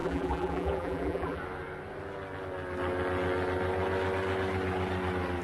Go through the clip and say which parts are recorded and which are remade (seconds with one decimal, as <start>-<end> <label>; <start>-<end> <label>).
0.0-1.4 remade; 1.4-5.4 recorded

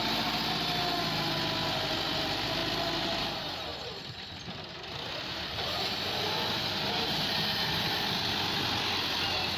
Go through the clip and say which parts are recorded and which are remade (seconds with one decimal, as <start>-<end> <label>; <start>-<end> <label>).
0.0-2.6 recorded; 2.6-3.2 remade; 3.2-3.7 recorded; 3.7-7.2 remade; 7.2-9.6 recorded

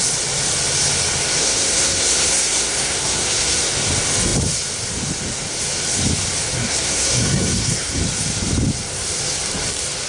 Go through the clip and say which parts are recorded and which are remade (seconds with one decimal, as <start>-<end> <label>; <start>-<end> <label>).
0.0-1.4 recorded; 1.4-3.7 remade; 3.7-6.6 recorded; 6.6-8.0 remade; 8.0-10.1 recorded

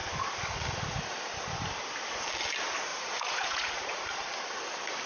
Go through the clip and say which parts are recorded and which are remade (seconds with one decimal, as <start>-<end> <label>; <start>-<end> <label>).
0.0-2.9 recorded; 2.9-4.0 remade; 4.0-5.1 recorded

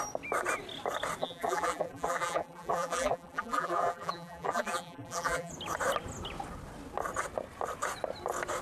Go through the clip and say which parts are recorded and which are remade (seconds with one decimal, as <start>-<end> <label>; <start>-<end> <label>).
0.0-1.2 recorded; 1.2-5.5 remade; 5.5-8.6 recorded

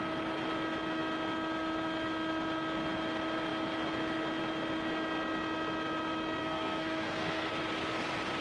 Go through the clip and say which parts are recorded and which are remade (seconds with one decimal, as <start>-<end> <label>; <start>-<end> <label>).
0.0-6.4 recorded; 6.4-7.5 remade; 7.5-8.4 recorded

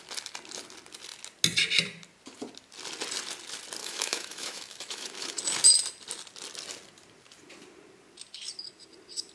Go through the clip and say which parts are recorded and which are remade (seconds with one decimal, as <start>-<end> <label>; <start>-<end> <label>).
0.0-3.8 recorded; 3.8-5.4 remade; 5.4-9.3 recorded